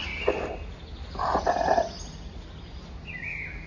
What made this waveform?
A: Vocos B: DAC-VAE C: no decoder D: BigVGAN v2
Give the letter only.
C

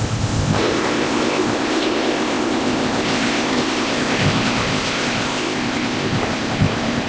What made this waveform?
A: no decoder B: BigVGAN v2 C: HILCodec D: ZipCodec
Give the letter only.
D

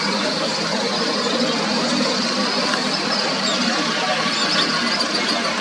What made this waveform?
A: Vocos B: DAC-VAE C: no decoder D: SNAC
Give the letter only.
C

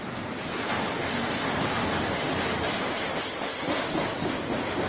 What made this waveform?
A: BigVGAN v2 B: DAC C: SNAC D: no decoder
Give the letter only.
A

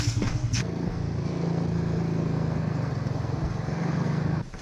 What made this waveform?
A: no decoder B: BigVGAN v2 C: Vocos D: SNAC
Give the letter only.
D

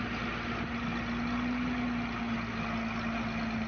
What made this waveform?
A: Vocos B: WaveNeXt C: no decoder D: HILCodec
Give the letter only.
C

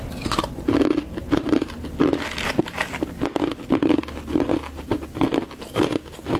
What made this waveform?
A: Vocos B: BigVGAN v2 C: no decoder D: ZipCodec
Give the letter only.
B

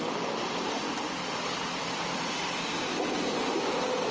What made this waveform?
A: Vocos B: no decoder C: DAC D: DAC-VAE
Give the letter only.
B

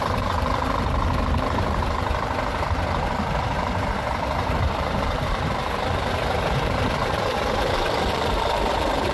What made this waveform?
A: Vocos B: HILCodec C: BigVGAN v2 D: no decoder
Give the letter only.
C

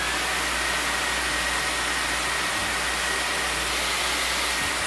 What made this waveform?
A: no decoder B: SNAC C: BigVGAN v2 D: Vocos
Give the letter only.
A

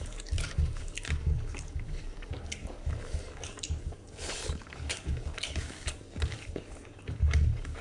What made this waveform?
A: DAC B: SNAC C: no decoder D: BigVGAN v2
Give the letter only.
A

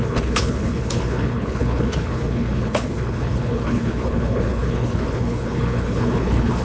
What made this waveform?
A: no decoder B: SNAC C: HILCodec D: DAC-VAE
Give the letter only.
C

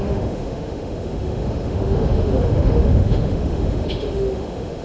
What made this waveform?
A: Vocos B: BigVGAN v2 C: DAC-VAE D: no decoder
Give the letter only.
C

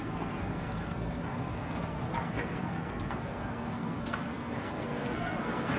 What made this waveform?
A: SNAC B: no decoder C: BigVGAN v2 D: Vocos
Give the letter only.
A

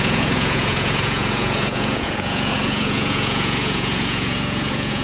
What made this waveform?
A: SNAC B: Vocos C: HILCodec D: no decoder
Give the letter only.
B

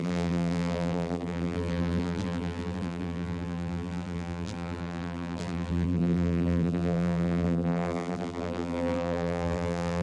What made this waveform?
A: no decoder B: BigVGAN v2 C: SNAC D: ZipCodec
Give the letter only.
B